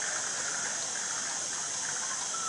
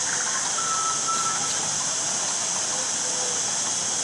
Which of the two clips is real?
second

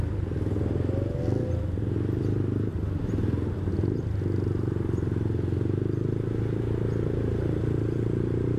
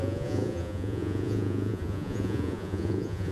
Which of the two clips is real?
first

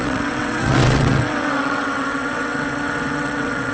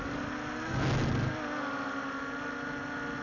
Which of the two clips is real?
second